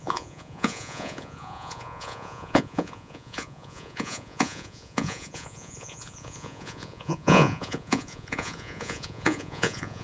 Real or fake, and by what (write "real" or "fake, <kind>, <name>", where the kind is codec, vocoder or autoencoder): fake, vocoder, Vocos